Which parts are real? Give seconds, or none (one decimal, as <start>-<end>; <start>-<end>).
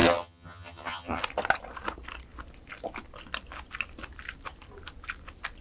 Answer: 1.2-5.6